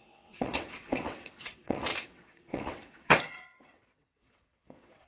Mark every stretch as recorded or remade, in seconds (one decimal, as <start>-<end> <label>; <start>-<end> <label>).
0.0-5.1 remade